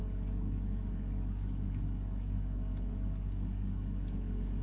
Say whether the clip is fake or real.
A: fake